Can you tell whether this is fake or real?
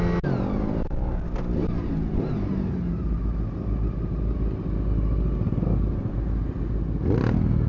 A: real